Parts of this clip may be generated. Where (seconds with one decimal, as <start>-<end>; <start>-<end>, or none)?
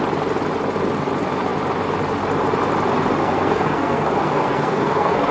3.2-5.3